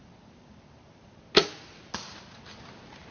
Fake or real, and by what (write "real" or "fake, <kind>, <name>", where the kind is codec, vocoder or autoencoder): real